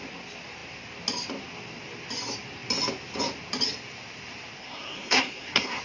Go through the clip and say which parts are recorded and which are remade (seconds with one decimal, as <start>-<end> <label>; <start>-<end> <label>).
0.0-4.6 recorded; 4.6-5.8 remade